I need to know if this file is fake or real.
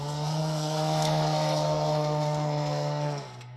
fake